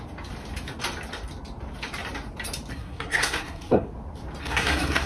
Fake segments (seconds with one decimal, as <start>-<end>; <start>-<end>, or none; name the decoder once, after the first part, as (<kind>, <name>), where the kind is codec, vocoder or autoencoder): 2.7-3.9 (codec, SNAC); 4.4-5.1

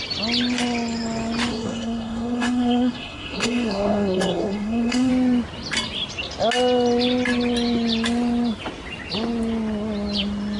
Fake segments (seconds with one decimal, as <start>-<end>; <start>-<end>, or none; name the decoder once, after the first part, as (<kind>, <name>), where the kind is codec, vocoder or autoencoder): 1.5-5.1 (codec, SNAC)

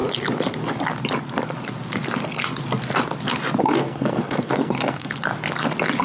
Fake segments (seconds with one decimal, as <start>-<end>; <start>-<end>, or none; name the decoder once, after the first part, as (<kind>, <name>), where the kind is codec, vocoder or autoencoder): 3.6-5.3 (codec, SNAC)